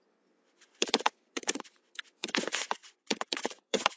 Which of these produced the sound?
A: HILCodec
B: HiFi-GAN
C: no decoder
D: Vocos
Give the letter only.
D